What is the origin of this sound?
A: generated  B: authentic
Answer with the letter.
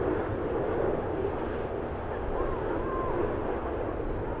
B